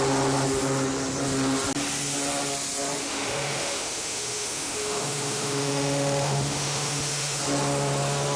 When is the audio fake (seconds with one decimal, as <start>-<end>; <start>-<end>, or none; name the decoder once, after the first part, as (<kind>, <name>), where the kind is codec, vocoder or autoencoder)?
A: 3.0-7.4 (autoencoder, DAC-VAE)